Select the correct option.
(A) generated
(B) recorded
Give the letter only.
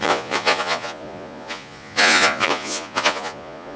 A